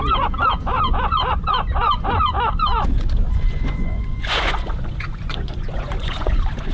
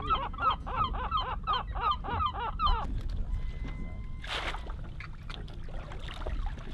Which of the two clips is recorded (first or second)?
second